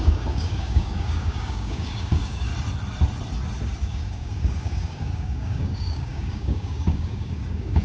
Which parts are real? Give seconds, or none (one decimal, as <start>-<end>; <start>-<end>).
2.5-3.8

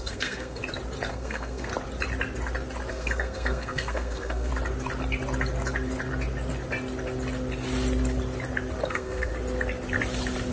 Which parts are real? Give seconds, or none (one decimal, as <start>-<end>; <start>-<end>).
0.6-1.1; 1.7-2.9; 4.5-8.9; 9.3-10.5

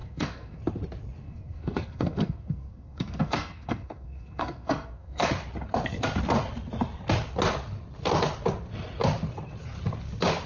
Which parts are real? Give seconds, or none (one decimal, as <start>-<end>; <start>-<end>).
0.6-1.2; 5.3-10.5

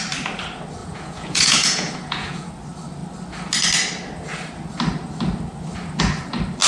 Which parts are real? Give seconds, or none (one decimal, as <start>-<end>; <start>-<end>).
0.0-0.8; 2.5-6.7

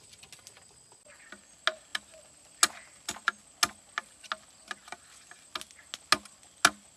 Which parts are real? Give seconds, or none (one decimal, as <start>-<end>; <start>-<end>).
0.0-7.0

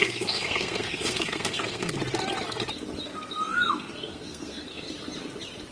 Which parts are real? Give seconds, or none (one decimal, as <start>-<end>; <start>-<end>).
2.0-3.1; 4.9-5.7

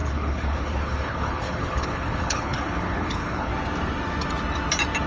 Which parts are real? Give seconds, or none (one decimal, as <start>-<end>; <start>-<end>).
3.5-5.1

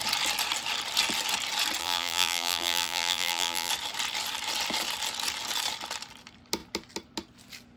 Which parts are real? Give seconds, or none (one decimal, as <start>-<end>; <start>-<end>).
0.0-1.8; 3.7-7.8